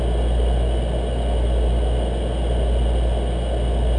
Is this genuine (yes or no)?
yes